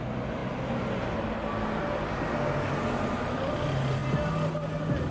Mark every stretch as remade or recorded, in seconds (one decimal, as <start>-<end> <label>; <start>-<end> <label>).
0.0-5.1 recorded